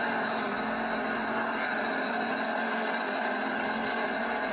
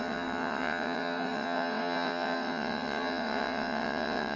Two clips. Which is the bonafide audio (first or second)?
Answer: first